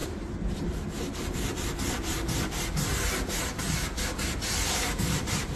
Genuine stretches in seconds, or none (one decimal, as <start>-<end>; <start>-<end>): 3.4-5.6